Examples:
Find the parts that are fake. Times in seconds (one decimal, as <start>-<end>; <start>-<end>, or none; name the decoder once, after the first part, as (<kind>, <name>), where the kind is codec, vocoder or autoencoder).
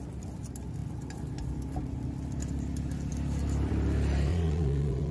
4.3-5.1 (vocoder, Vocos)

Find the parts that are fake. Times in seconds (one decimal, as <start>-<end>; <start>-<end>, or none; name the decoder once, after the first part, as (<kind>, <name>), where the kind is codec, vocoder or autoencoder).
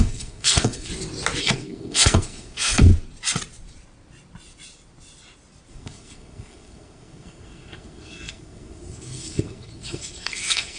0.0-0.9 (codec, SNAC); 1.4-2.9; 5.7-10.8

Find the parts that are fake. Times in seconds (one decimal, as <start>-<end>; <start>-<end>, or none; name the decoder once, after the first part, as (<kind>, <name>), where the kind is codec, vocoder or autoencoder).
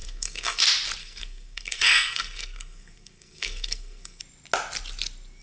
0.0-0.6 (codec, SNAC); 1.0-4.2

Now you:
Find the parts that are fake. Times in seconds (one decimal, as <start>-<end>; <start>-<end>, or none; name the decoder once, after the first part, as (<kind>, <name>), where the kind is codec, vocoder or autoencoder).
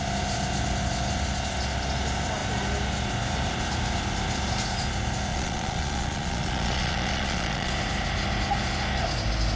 5.3-7.7 (vocoder, Vocos)